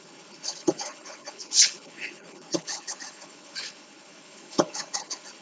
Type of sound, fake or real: fake